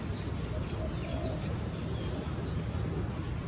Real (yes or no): yes